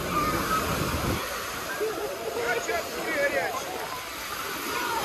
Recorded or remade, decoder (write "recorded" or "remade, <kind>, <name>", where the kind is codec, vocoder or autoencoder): recorded